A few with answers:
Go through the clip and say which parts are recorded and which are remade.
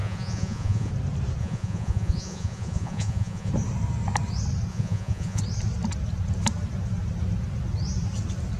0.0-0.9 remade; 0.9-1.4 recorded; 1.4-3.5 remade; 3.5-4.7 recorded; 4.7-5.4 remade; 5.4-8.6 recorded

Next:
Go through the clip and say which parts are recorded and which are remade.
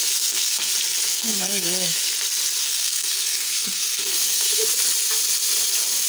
0.0-0.7 remade; 0.7-1.1 recorded; 1.1-2.0 remade; 2.0-2.6 recorded; 2.6-4.6 remade; 4.6-6.1 recorded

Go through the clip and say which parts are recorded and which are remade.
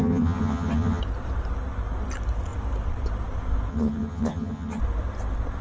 0.0-1.0 remade; 1.0-3.7 recorded; 3.7-4.8 remade; 4.8-5.6 recorded